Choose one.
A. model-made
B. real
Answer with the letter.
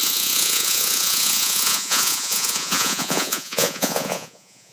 A